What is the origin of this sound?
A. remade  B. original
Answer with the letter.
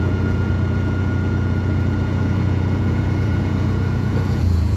A